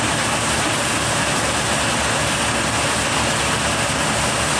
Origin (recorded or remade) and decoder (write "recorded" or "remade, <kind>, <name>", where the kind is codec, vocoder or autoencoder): recorded